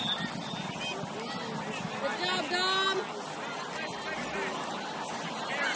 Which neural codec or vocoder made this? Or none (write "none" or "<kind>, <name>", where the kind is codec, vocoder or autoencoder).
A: none